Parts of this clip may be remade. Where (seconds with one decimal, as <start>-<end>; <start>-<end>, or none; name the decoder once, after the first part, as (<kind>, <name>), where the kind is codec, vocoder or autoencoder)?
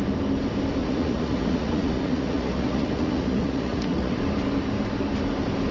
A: 0.8-4.2 (vocoder, Vocos)